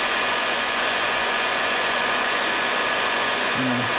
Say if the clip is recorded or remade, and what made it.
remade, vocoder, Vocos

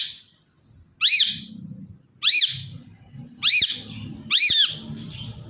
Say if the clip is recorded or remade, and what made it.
recorded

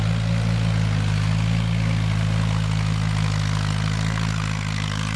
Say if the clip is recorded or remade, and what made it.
recorded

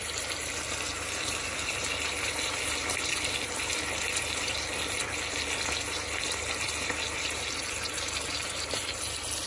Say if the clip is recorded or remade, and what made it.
recorded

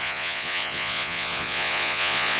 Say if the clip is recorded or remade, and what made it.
remade, vocoder, Vocos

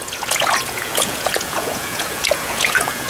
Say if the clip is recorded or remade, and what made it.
remade, vocoder, Vocos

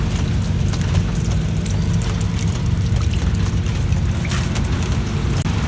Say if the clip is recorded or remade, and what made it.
recorded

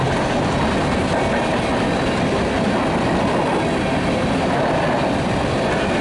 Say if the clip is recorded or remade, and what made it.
recorded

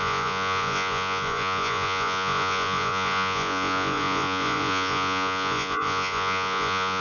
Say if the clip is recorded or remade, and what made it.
remade, vocoder, Vocos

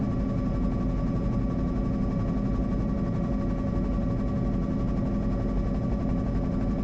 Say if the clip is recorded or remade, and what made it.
recorded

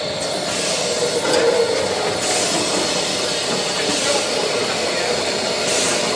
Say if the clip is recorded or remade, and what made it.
recorded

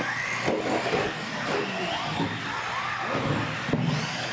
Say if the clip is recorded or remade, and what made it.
recorded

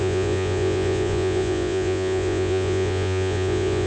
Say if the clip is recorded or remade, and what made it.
remade, vocoder, Vocos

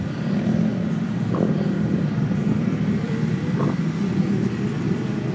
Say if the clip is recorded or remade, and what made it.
recorded